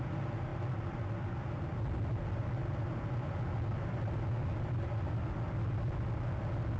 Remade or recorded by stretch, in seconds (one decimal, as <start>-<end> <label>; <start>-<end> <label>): 0.0-6.8 recorded